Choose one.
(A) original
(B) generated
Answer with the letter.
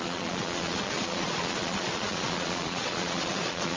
B